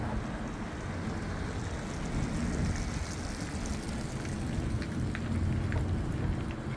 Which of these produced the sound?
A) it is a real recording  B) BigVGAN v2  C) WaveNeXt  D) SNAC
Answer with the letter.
A